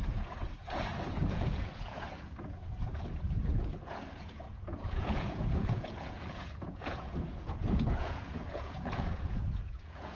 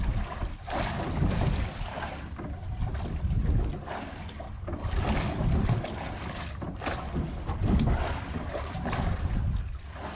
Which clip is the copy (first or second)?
first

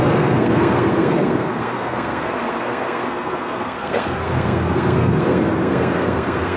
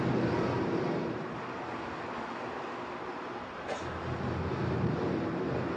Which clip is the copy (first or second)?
first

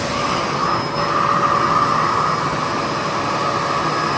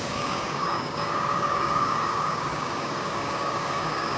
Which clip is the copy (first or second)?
second